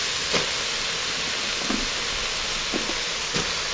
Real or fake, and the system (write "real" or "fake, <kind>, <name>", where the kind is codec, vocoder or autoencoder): real